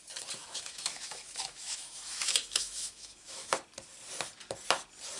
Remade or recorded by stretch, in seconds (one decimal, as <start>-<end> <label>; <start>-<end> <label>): 0.0-0.4 recorded; 0.4-3.5 remade; 3.5-5.2 recorded